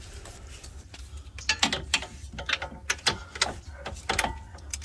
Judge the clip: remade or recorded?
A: recorded